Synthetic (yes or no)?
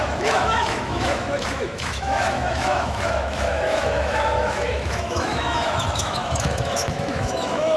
yes